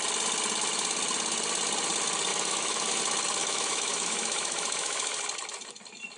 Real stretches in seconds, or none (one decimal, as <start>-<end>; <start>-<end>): 0.0-2.3; 3.0-3.4; 5.2-6.2